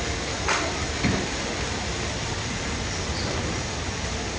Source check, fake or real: real